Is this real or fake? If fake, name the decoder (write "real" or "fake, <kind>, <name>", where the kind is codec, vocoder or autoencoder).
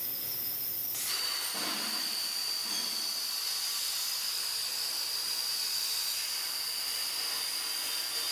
real